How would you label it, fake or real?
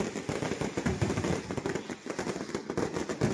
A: real